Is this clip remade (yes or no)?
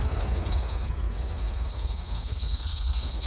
yes